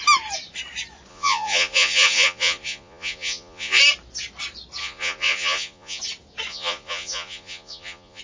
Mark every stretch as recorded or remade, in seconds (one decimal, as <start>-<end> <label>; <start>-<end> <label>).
0.0-1.1 recorded; 1.1-3.8 remade; 3.8-4.8 recorded; 4.8-6.0 remade; 6.0-6.5 recorded; 6.5-8.2 remade